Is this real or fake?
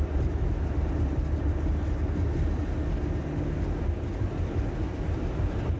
real